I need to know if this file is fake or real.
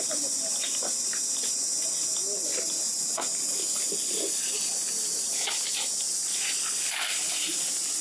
real